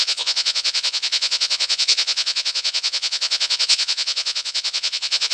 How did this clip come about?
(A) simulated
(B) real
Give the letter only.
A